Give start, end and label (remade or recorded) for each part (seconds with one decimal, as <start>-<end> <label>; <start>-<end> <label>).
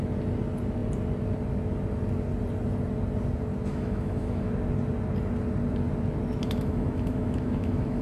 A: 0.0-3.7 recorded; 3.7-4.5 remade; 4.5-6.4 recorded; 6.4-8.0 remade